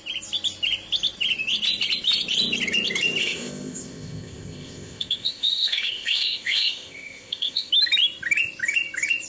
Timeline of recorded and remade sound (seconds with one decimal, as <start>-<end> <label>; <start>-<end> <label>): 0.0-3.2 recorded; 3.2-7.7 remade; 7.7-9.3 recorded